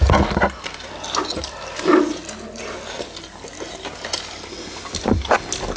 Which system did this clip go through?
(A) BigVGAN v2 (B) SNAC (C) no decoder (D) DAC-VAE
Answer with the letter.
C